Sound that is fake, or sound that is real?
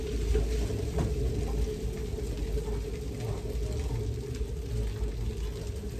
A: real